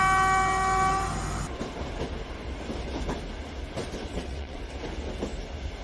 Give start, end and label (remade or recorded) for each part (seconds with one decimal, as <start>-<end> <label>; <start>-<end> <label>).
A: 0.0-4.1 recorded; 4.1-4.6 remade; 4.6-5.8 recorded